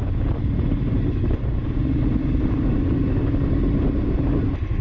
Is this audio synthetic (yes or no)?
no